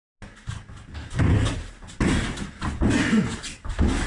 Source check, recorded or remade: recorded